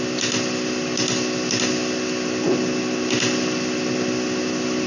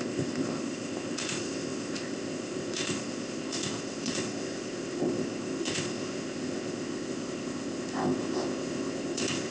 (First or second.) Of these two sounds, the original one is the first